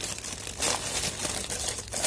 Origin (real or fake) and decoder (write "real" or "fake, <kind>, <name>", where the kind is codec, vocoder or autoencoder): real